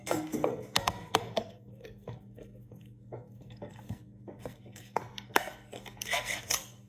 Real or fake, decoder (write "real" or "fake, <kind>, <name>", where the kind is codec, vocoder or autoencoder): fake, codec, SNAC